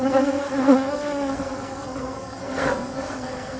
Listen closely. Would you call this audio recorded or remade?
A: remade